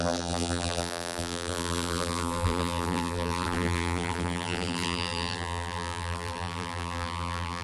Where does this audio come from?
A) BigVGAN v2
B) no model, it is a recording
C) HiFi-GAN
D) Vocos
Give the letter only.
A